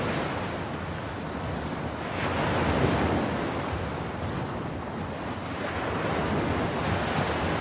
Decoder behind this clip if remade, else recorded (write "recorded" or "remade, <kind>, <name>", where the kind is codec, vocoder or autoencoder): recorded